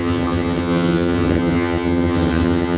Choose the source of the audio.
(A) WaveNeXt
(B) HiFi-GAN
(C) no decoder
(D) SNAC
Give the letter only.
B